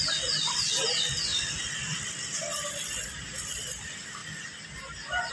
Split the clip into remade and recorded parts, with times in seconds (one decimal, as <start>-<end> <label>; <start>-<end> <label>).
0.0-1.3 recorded; 1.3-3.7 remade; 3.7-5.3 recorded